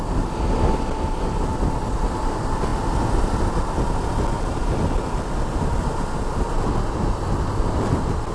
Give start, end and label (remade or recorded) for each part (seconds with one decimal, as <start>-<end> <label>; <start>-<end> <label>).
0.0-8.3 recorded